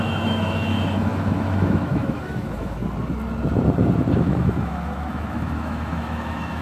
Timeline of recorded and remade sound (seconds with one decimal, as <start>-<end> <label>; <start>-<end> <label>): 0.0-2.8 remade; 2.8-4.2 recorded; 4.2-6.6 remade